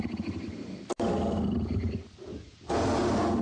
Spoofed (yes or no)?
no